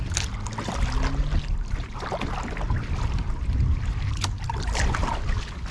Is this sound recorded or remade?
recorded